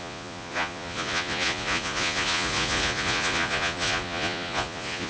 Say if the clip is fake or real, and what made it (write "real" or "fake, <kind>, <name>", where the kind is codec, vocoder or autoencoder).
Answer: fake, vocoder, Vocos